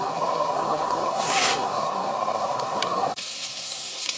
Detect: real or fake fake